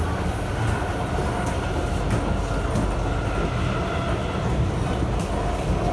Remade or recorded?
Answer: recorded